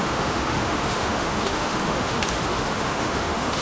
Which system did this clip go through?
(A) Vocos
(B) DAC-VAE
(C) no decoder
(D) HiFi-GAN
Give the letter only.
B